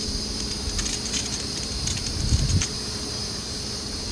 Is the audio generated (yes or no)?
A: yes